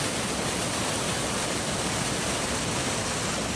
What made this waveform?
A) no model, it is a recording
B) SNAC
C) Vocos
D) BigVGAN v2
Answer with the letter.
A